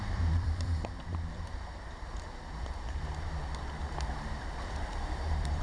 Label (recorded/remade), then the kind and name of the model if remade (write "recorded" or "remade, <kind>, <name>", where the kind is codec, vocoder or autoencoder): remade, vocoder, BigVGAN v2